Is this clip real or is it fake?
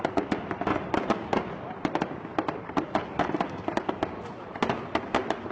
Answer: real